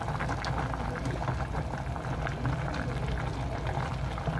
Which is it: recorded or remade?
recorded